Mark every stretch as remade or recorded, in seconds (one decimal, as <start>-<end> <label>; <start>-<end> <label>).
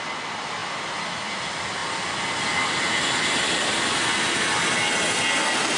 0.0-5.8 recorded